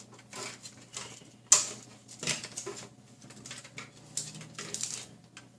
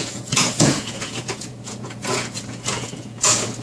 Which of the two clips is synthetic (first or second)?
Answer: second